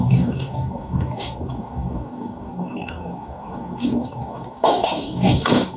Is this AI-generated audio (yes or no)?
yes